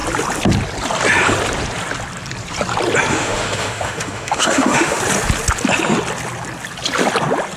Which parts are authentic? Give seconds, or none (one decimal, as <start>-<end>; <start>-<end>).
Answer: 0.0-3.1; 5.0-7.6